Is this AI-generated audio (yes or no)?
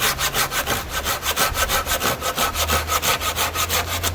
no